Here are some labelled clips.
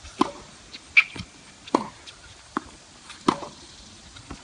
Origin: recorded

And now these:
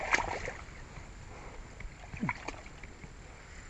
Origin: recorded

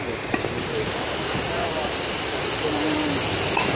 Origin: recorded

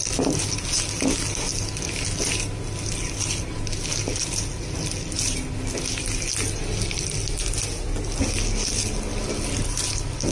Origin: recorded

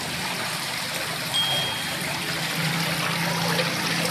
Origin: recorded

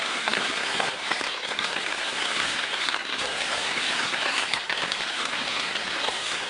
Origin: remade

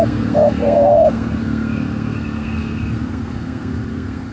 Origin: remade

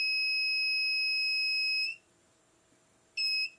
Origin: recorded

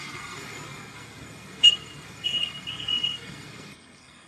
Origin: remade